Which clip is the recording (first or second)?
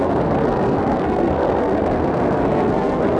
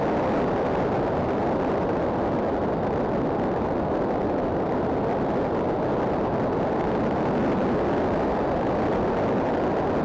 second